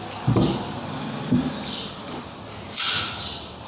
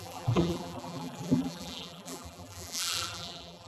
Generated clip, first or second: second